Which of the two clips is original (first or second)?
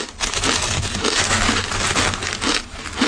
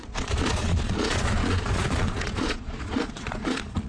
first